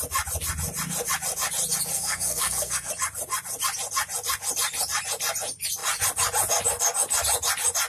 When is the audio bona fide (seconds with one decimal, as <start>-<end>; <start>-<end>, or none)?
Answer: 0.0-1.9; 2.9-7.9